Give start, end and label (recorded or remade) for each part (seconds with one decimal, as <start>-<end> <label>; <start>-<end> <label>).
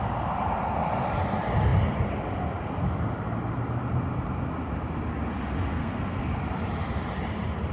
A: 0.0-5.7 recorded; 5.7-6.2 remade; 6.2-7.7 recorded